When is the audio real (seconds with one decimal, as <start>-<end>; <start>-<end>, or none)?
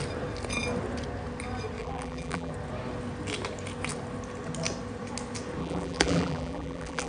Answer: 0.0-1.8; 2.5-5.6